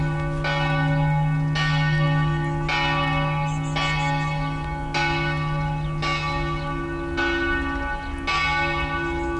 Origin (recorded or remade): recorded